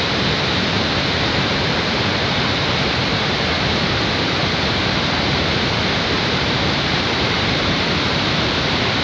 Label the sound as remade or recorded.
remade